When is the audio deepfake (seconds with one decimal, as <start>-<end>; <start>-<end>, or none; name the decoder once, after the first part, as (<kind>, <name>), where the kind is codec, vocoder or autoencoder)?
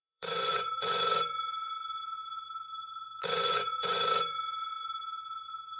0.0-5.8 (vocoder, Vocos)